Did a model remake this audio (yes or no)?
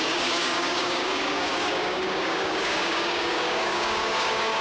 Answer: yes